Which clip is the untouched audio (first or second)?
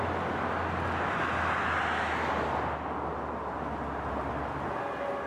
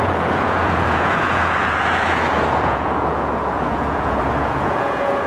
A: first